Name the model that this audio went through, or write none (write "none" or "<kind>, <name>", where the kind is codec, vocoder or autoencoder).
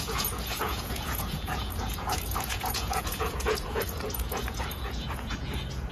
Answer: vocoder, Vocos